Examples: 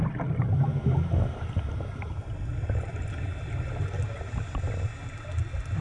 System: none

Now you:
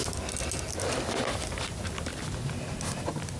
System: none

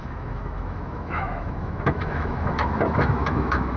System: autoencoder, DAC-VAE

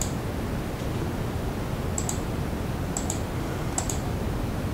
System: none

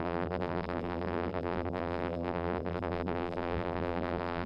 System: vocoder, BigVGAN v2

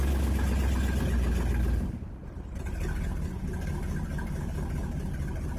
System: none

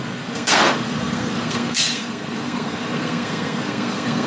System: codec, SNAC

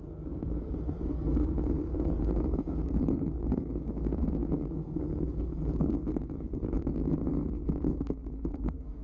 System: codec, SNAC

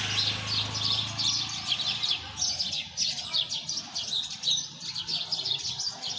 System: none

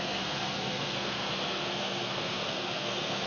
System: codec, SNAC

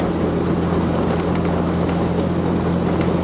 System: none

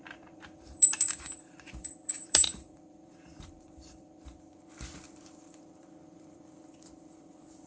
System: vocoder, BigVGAN v2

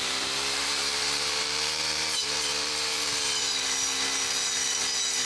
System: vocoder, BigVGAN v2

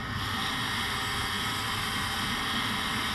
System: none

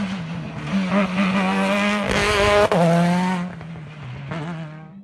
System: none